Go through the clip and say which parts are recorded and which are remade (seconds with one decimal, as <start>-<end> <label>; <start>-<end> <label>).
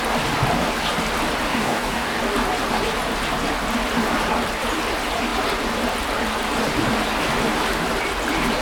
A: 0.0-1.5 recorded; 1.5-2.2 remade; 2.2-8.6 recorded